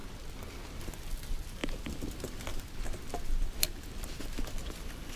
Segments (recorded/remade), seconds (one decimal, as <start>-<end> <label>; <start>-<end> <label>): 0.0-0.8 recorded; 0.8-1.6 remade; 1.6-4.7 recorded; 4.7-5.2 remade